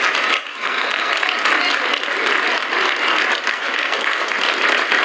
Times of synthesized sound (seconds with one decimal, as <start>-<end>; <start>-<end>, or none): 0.5-1.1; 3.5-4.3